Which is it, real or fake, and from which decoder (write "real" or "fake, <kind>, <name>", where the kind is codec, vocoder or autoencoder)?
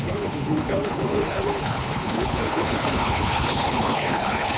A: fake, codec, HILCodec